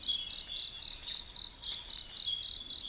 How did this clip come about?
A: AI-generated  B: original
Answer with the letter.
B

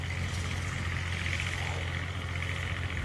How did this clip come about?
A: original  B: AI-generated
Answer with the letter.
A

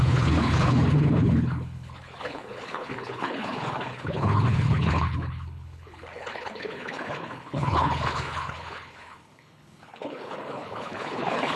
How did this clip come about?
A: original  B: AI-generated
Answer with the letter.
B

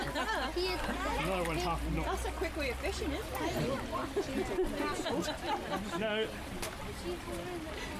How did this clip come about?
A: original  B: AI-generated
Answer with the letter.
A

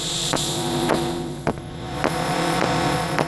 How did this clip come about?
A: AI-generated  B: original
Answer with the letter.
A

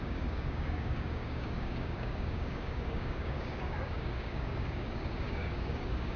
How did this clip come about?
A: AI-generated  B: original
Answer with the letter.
A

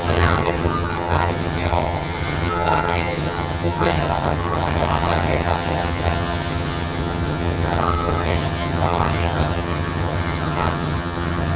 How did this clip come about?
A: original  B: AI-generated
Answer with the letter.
B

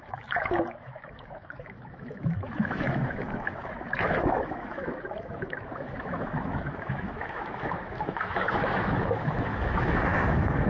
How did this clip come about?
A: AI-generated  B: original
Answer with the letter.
A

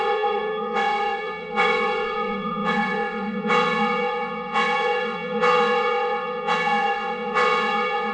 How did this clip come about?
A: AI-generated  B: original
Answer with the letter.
A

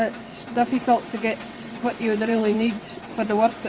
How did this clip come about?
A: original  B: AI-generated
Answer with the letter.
B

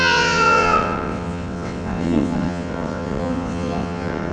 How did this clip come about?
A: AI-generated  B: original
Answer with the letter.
A